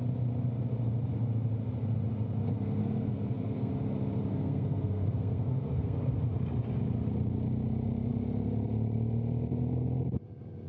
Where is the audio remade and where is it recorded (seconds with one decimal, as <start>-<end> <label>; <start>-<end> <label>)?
0.0-2.8 recorded; 2.8-3.7 remade; 3.7-4.3 recorded; 4.3-6.2 remade; 6.2-10.7 recorded